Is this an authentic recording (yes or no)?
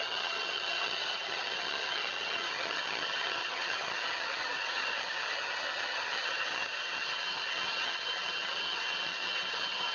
no